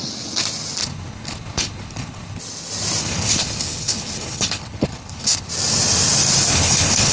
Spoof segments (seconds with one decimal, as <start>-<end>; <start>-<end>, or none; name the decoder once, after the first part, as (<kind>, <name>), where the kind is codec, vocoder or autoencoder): 0.8-2.4 (codec, HILCodec); 3.0-5.5; 6.5-7.1